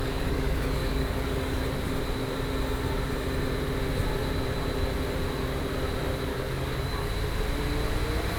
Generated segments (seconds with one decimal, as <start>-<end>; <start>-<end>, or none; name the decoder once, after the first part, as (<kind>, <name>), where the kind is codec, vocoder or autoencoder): 0.0-1.6 (codec, DAC); 6.3-7.1